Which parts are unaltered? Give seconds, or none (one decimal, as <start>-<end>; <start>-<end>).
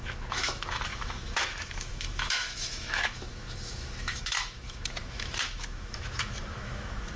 none